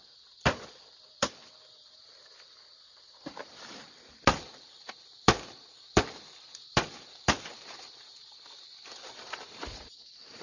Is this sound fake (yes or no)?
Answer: yes